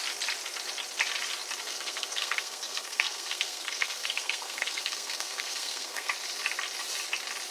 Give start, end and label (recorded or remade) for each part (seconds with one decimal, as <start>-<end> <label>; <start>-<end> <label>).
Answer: 0.0-1.6 recorded; 1.6-6.1 remade; 6.1-7.5 recorded